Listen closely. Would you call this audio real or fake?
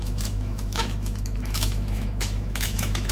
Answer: fake